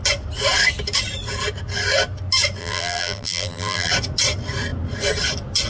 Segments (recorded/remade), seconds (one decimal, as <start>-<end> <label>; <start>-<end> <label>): 0.0-2.6 recorded; 2.6-3.9 remade; 3.9-5.7 recorded